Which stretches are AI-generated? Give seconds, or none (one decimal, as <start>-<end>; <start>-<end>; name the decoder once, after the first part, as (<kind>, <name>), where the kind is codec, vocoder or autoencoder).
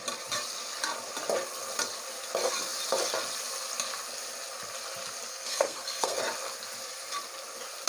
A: 5.3-6.2 (codec, SNAC)